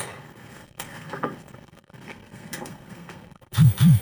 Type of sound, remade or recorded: remade